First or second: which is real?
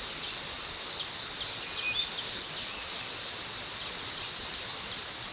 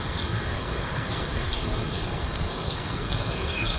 first